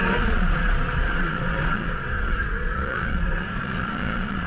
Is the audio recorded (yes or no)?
no